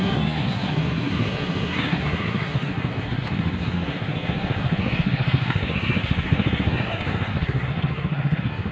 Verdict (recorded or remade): remade